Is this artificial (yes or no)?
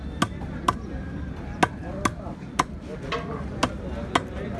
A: no